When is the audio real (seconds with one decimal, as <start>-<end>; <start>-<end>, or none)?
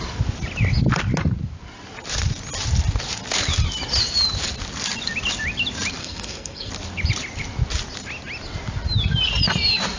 0.0-6.0; 6.7-10.0